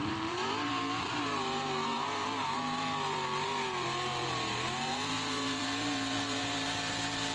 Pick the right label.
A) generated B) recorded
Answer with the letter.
A